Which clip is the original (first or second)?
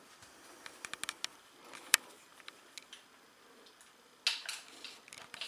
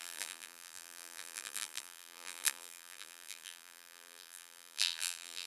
first